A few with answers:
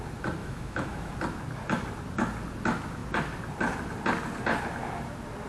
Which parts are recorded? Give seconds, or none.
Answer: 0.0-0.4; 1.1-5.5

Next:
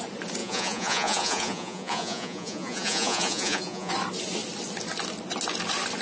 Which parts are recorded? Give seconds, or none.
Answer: 0.0-0.4; 3.9-6.0